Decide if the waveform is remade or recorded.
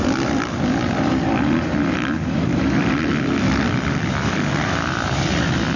remade